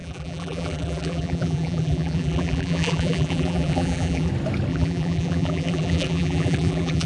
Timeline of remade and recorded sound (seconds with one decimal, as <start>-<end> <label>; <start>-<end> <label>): 0.0-4.3 remade; 4.3-4.7 recorded; 4.7-7.1 remade